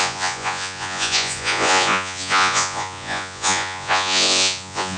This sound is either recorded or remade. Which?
remade